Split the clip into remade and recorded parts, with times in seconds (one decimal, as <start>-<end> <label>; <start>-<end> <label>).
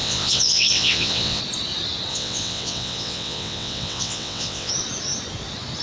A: 0.0-1.4 remade; 1.4-2.1 recorded; 2.1-4.7 remade; 4.7-5.8 recorded